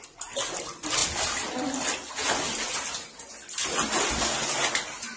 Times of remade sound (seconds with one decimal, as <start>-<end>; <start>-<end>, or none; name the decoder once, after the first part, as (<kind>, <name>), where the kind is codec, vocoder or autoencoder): none